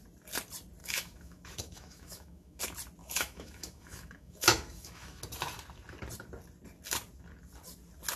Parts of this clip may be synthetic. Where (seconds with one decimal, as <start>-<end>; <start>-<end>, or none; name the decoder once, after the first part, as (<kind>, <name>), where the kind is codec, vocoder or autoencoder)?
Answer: 0.8-2.6 (autoencoder, DAC-VAE); 3.0-5.2